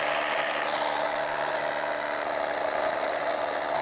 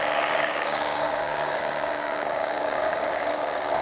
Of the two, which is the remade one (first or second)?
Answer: second